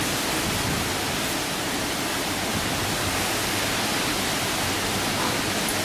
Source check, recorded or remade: recorded